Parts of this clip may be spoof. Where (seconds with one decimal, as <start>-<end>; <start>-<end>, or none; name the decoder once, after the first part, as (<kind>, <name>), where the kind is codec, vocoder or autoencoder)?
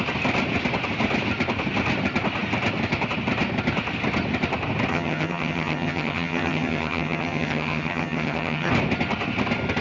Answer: 4.9-8.7 (vocoder, HiFi-GAN)